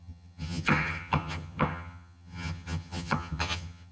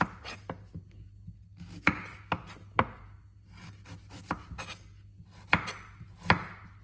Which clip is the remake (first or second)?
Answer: first